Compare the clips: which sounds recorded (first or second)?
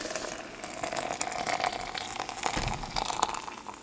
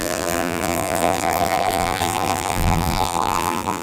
first